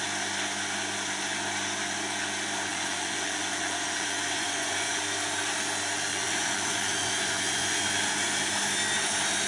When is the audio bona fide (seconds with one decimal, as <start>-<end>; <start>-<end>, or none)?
0.0-2.7; 5.0-6.1; 7.9-9.5